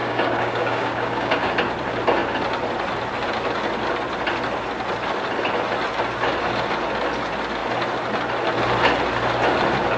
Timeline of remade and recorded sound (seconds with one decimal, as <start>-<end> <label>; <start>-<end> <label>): 0.0-1.5 remade; 1.5-10.0 recorded